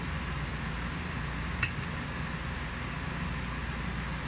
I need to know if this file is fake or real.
real